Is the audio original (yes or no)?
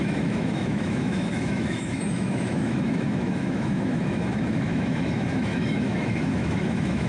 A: no